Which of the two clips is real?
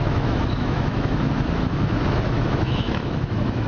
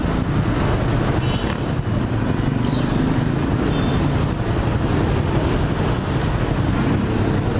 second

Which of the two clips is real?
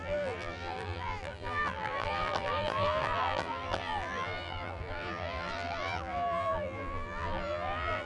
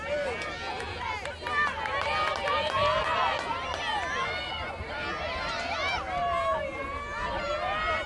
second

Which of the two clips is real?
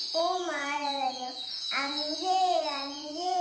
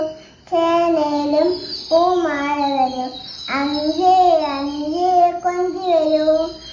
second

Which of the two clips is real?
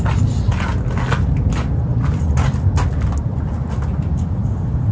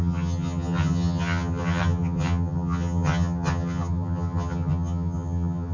first